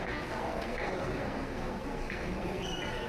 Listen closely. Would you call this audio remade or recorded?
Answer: remade